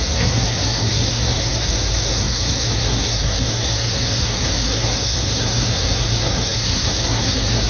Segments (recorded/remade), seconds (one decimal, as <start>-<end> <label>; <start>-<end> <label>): 0.0-7.7 remade